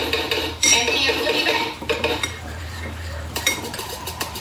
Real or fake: fake